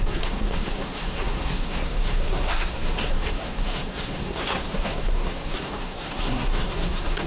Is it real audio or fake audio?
fake